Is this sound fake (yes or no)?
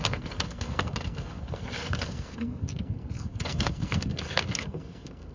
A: yes